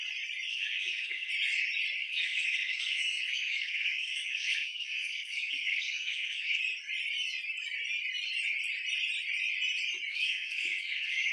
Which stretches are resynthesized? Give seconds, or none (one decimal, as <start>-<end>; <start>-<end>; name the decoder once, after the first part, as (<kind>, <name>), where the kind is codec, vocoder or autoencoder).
0.5-1.3 (codec, SNAC); 2.0-6.6; 10.1-11.3